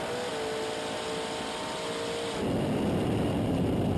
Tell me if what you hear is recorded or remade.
recorded